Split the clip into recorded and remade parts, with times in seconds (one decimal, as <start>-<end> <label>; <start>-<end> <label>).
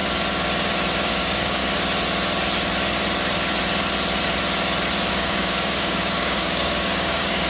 0.0-1.1 recorded; 1.1-1.6 remade; 1.6-5.1 recorded; 5.1-7.5 remade